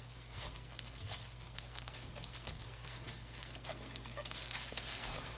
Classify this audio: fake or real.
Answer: fake